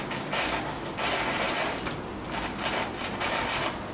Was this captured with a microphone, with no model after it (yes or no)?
yes